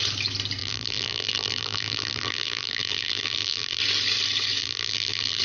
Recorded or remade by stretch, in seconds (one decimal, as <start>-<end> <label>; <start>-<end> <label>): 0.0-0.6 recorded; 0.6-3.8 remade; 3.8-4.6 recorded; 4.6-5.4 remade